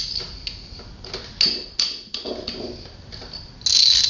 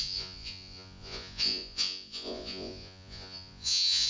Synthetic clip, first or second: second